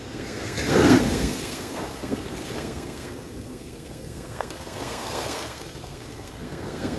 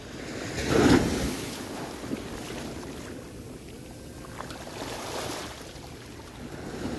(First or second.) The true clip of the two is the second